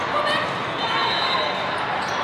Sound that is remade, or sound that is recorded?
recorded